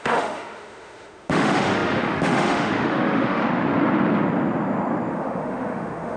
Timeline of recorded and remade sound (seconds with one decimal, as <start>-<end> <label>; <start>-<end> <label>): 0.0-3.4 remade; 3.4-5.1 recorded; 5.1-6.2 remade